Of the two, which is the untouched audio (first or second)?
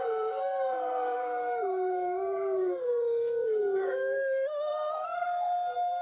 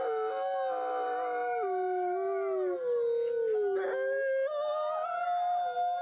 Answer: second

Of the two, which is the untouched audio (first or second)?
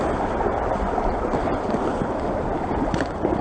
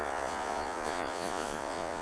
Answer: first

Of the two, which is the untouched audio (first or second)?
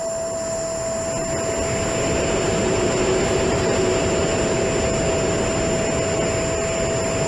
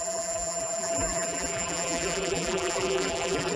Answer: first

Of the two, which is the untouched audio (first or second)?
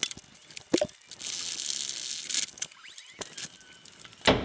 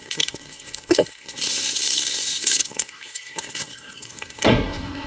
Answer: first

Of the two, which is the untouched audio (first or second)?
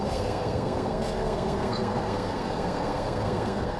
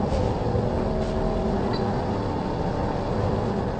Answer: second